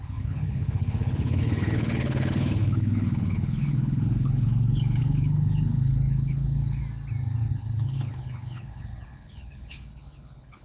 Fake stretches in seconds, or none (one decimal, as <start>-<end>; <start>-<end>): 0.0-6.8; 7.5-10.6